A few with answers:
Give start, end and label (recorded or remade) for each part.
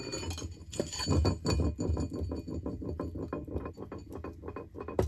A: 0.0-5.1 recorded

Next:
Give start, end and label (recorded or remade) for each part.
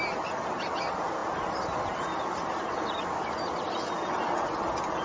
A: 0.0-5.0 recorded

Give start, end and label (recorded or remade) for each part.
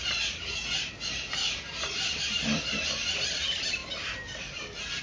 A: 0.0-5.0 recorded